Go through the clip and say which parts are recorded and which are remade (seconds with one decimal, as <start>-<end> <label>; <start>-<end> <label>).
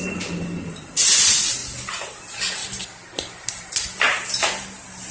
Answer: 0.0-5.1 recorded